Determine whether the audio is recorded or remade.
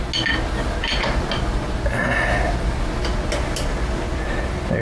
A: recorded